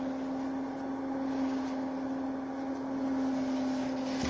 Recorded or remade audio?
recorded